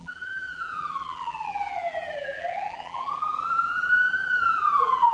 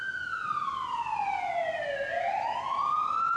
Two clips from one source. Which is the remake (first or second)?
first